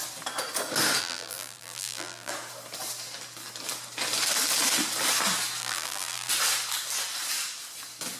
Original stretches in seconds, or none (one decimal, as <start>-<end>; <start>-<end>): 0.0-1.0; 2.3-5.6; 6.3-8.2